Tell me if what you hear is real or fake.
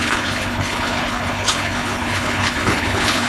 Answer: fake